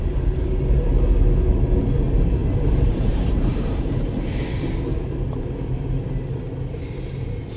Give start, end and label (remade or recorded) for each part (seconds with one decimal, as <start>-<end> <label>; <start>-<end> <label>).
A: 0.0-2.4 recorded; 2.4-4.4 remade; 4.4-4.9 recorded; 4.9-5.4 remade; 5.4-7.6 recorded